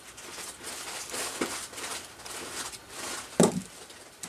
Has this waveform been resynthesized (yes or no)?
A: no